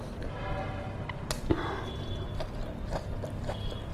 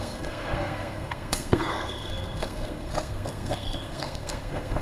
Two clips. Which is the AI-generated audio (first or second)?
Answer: second